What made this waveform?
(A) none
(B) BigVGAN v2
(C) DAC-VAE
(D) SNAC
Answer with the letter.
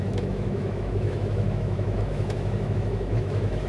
C